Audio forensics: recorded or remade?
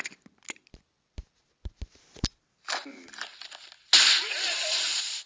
recorded